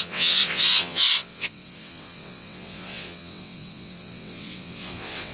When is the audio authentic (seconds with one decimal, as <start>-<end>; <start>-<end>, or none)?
none